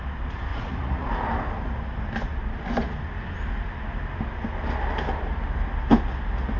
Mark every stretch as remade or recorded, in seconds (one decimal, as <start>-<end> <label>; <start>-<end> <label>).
0.0-0.5 recorded; 0.5-1.1 remade; 1.1-6.6 recorded